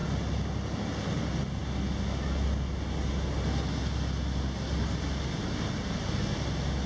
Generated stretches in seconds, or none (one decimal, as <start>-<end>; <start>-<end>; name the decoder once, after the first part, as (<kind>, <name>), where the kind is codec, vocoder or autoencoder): none